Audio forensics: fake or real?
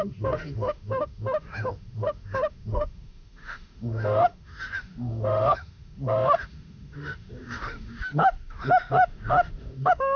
fake